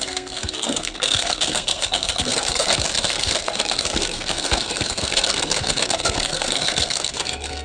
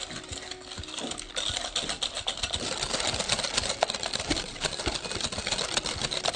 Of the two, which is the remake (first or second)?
first